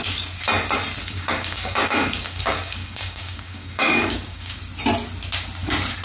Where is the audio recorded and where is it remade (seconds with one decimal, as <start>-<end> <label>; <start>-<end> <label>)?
0.0-1.0 recorded; 1.0-4.6 remade; 4.6-6.0 recorded